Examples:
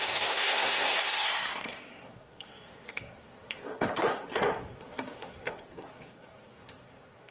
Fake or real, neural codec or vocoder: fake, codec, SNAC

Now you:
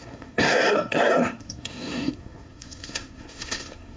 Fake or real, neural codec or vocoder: fake, codec, SNAC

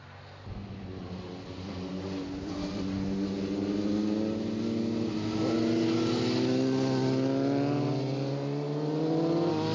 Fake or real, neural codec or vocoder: real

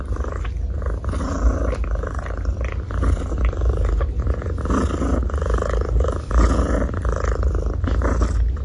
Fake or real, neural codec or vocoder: real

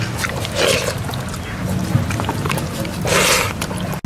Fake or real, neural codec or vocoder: real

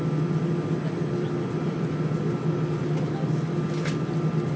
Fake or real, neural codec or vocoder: real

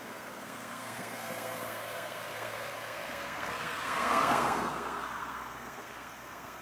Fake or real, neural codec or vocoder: fake, codec, SNAC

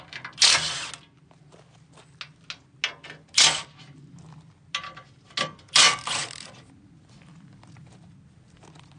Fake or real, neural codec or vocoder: real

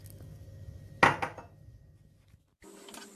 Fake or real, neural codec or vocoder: real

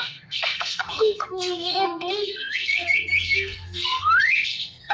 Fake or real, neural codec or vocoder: fake, codec, SNAC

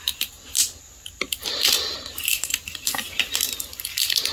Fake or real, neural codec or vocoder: real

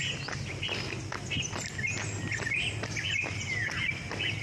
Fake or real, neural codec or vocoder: real